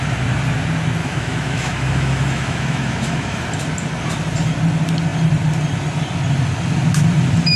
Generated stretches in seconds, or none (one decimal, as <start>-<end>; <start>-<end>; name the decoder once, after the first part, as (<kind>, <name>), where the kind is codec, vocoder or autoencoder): 1.0-3.4 (autoencoder, DAC-VAE)